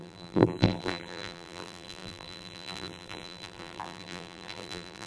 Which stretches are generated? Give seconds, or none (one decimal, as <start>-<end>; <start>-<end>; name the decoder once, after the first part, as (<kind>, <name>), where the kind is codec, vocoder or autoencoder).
0.0-5.1 (vocoder, BigVGAN v2)